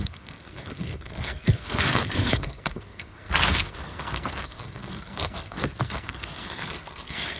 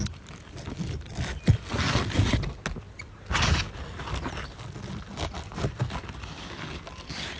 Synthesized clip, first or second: first